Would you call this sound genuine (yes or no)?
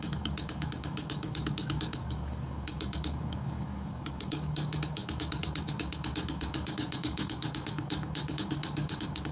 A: no